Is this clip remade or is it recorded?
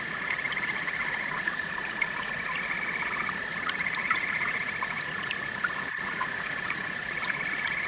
remade